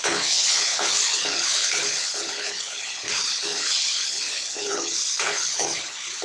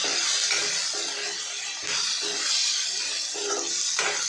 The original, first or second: second